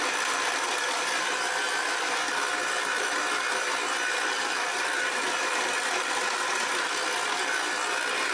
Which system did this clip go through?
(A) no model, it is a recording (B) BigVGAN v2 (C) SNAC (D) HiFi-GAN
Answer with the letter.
A